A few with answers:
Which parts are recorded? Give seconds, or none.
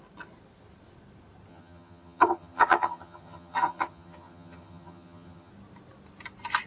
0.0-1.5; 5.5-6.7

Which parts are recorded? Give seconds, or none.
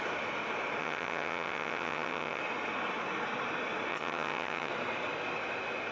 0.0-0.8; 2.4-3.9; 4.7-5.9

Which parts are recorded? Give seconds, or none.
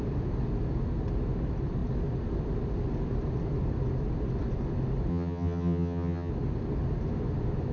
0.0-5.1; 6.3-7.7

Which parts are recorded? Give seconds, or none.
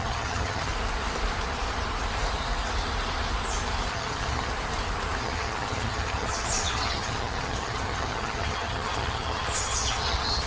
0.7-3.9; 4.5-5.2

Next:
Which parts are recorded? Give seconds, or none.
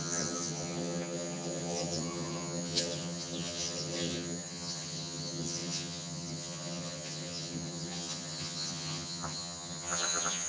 none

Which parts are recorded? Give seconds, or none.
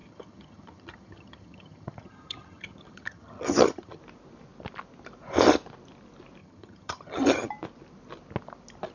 4.0-6.4; 7.5-8.9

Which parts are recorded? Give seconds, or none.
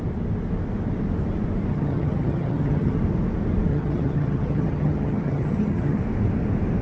0.0-1.7; 3.0-3.7; 6.0-6.8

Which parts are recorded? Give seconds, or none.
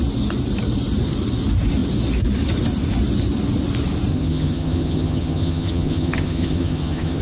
0.0-4.1